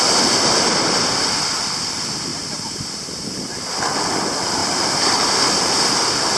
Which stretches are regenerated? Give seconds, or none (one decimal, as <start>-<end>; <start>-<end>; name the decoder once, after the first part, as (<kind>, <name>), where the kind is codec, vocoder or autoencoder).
2.3-3.7 (vocoder, BigVGAN v2); 4.6-5.4